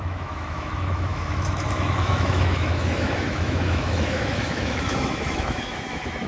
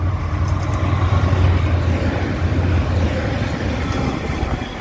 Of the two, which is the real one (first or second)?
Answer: second